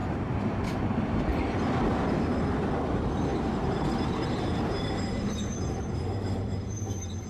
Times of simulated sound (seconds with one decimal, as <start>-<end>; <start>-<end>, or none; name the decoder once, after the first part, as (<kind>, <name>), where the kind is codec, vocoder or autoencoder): 0.0-0.6 (vocoder, BigVGAN v2); 3.3-7.3